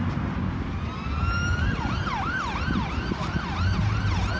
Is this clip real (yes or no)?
yes